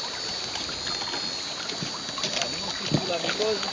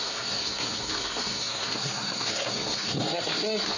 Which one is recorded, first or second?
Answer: first